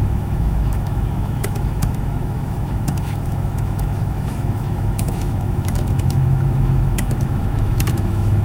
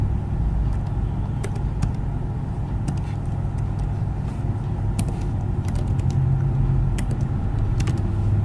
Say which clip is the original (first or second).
second